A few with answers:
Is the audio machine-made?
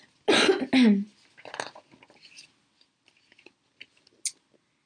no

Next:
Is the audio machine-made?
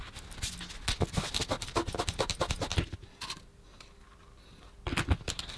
no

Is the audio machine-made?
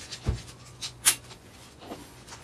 yes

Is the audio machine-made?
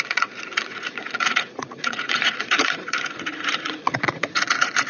yes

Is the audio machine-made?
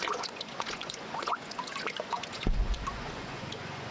yes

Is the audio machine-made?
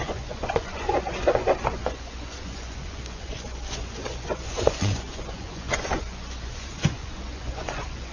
yes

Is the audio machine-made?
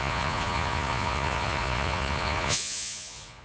yes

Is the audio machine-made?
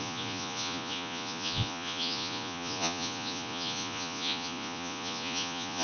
yes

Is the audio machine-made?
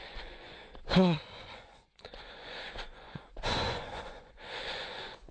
yes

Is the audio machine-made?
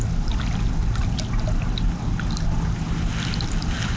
no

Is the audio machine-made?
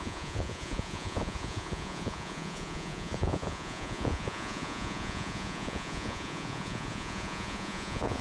yes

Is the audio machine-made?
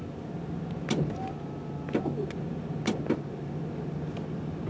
no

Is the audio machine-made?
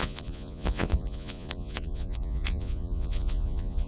yes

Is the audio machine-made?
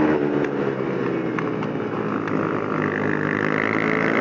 no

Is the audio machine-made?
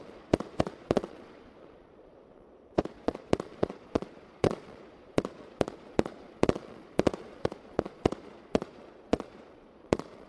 yes